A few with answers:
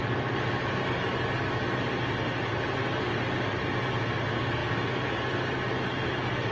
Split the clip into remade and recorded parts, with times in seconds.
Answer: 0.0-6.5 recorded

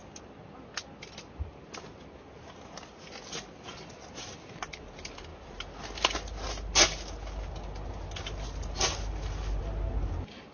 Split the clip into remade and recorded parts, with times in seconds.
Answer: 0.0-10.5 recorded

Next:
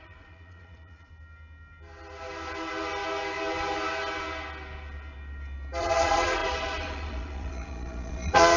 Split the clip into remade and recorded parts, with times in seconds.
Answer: 0.0-1.1 remade; 1.1-5.8 recorded; 5.8-8.6 remade

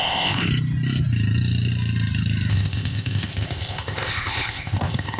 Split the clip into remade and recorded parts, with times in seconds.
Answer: 0.0-0.5 remade; 0.5-2.5 recorded; 2.5-5.2 remade